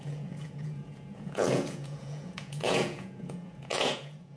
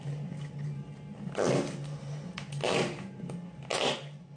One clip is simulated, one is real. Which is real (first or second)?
second